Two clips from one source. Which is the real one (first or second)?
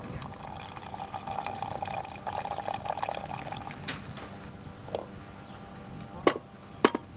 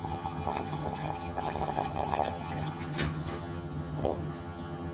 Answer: first